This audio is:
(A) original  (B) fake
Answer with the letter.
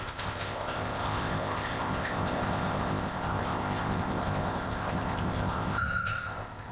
B